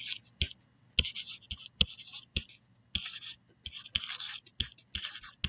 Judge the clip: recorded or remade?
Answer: recorded